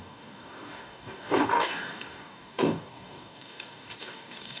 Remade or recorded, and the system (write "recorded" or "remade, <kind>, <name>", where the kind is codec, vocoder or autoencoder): remade, codec, DAC